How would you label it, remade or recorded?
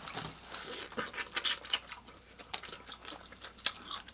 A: recorded